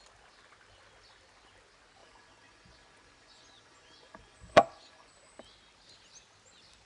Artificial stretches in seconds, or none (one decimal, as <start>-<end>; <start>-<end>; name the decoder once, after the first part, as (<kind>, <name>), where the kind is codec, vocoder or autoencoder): 2.0-5.1 (vocoder, Vocos)